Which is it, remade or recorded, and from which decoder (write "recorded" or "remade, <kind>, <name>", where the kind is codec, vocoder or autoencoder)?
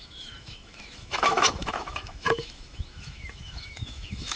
remade, autoencoder, DAC-VAE